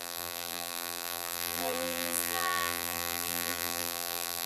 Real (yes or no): no